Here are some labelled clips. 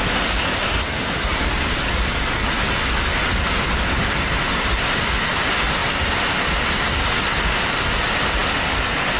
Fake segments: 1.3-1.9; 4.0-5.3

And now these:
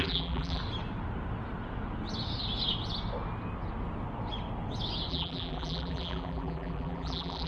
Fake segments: 0.0-0.6; 5.1-7.5

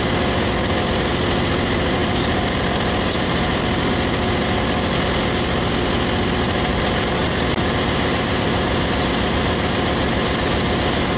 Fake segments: 2.0-3.9; 6.7-8.9

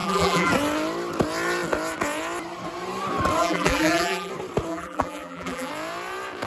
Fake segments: 0.0-0.5; 3.4-4.3; 4.7-5.7

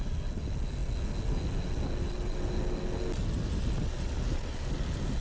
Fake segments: none

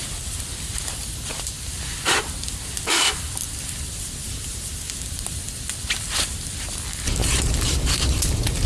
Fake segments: 4.2-4.9; 7.2-7.9

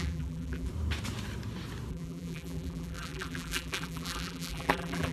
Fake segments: 0.0-0.7; 1.9-5.1

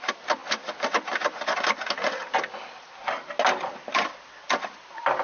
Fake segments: 0.0-0.4; 3.5-5.2